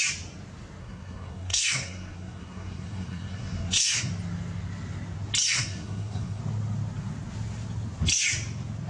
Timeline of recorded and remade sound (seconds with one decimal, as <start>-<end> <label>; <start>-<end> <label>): 0.0-0.8 recorded; 0.8-4.1 remade; 4.1-5.5 recorded; 5.5-6.4 remade; 6.4-8.9 recorded